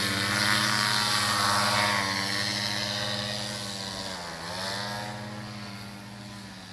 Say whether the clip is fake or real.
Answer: real